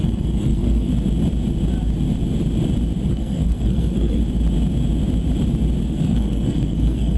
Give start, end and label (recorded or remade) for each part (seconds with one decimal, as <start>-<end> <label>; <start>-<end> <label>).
0.0-0.9 remade; 0.9-3.1 recorded; 3.1-4.2 remade; 4.2-5.8 recorded; 5.8-7.2 remade